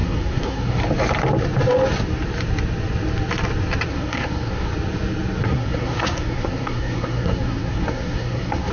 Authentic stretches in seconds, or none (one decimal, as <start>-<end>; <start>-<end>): 0.8-3.9; 4.7-5.4